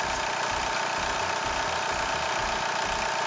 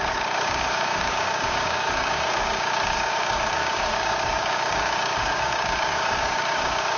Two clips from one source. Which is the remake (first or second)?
second